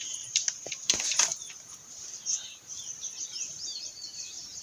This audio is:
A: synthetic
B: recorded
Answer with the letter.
A